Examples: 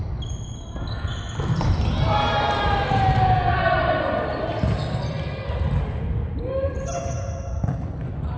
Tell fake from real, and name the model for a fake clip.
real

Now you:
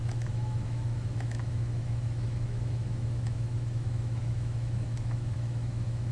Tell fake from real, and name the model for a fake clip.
fake, autoencoder, DAC-VAE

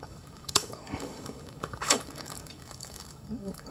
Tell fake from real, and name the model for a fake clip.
fake, codec, DAC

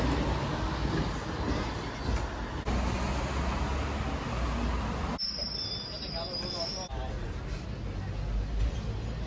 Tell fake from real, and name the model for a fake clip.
real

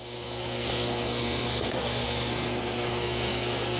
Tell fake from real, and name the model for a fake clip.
fake, codec, SNAC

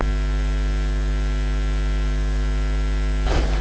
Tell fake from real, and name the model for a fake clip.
real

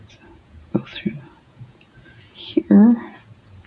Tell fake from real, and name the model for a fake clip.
fake, vocoder, Vocos